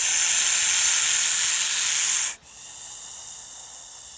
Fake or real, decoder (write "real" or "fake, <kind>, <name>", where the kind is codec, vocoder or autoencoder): real